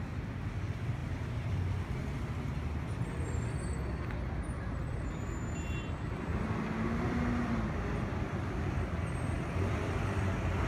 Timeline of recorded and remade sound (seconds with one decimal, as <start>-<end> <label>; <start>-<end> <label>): 0.0-10.7 recorded